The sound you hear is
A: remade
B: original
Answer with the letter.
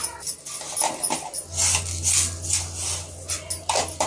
B